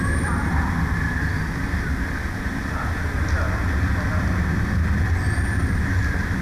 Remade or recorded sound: recorded